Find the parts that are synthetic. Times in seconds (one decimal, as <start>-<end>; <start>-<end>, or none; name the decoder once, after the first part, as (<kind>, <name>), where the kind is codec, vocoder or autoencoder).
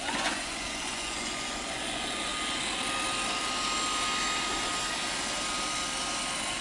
0.0-2.3 (vocoder, Vocos)